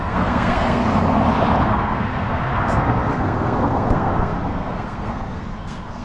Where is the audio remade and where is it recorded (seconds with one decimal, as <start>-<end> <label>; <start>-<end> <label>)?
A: 0.0-0.8 remade; 0.8-1.6 recorded; 1.6-6.0 remade